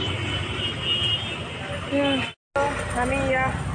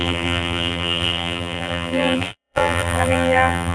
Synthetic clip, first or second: second